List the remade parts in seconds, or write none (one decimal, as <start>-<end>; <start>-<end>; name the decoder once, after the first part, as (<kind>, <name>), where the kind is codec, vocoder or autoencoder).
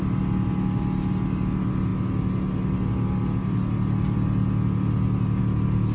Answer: none